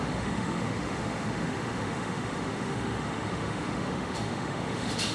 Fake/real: fake